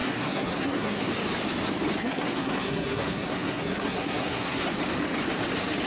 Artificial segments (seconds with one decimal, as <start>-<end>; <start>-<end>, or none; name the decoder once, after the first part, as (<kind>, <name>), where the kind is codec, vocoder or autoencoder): 0.0-1.1 (codec, SNAC); 2.0-4.6